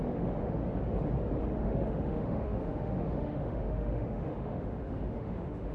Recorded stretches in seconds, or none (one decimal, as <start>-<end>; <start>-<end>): 0.6-1.4